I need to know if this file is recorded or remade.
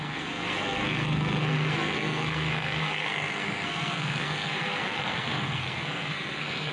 remade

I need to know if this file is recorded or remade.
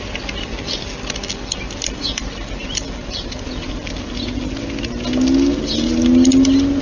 recorded